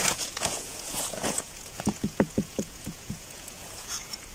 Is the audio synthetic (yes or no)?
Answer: yes